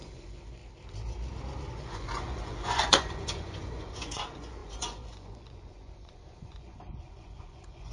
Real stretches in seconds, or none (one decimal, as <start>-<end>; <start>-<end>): 0.6-1.7